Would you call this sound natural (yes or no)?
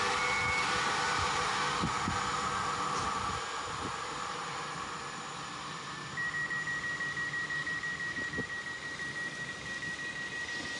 yes